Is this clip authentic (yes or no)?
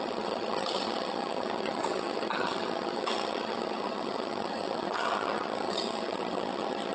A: no